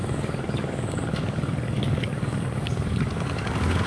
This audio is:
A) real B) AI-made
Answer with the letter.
B